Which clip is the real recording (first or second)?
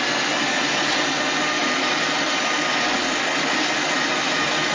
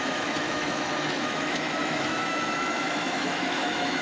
first